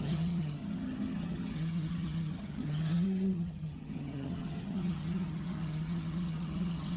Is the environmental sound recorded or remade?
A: remade